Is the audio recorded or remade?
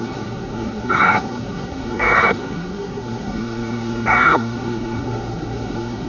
remade